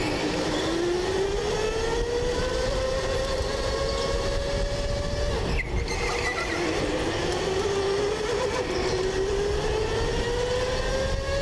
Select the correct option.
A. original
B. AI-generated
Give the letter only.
A